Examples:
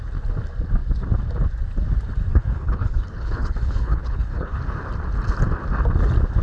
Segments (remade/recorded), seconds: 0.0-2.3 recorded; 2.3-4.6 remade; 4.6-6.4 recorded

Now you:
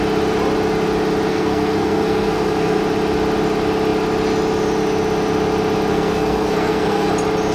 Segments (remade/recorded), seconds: 0.0-1.3 recorded; 1.3-2.8 remade; 2.8-5.9 recorded; 5.9-7.1 remade; 7.1-7.5 recorded

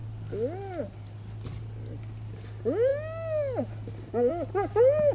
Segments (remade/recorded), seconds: 0.0-5.1 recorded

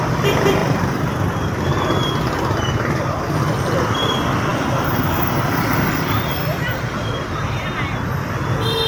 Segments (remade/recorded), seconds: 0.0-0.6 recorded; 0.6-1.1 remade; 1.1-4.5 recorded; 4.5-6.2 remade; 6.2-8.9 recorded

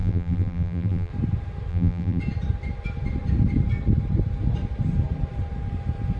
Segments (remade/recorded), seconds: 0.0-1.1 remade; 1.1-1.7 recorded; 1.7-2.2 remade; 2.2-6.2 recorded

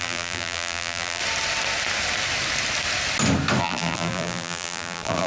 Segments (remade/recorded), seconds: 0.0-1.2 remade; 1.2-3.6 recorded; 3.6-5.3 remade